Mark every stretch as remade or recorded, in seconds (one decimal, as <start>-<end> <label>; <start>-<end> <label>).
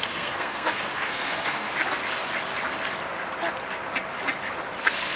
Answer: 0.0-1.7 remade; 1.7-4.8 recorded; 4.8-5.2 remade